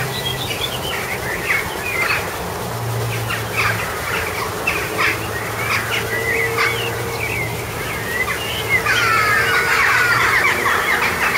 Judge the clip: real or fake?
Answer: real